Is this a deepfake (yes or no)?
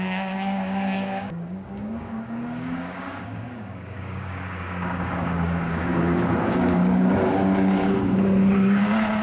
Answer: yes